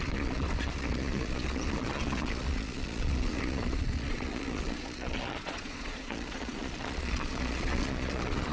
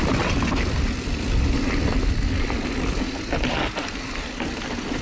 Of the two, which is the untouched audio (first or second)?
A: second